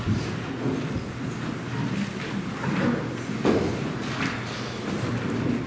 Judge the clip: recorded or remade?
recorded